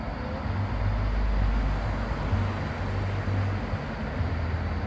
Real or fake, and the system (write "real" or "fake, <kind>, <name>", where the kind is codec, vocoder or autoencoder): real